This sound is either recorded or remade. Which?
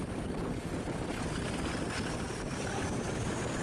recorded